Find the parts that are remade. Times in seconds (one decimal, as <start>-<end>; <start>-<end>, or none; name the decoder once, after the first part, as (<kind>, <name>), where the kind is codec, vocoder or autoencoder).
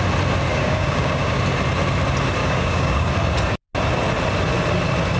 0.5-1.4 (codec, DAC); 2.4-3.1